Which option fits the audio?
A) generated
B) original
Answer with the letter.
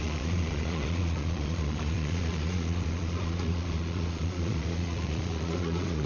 A